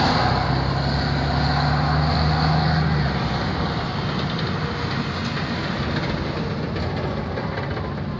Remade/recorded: recorded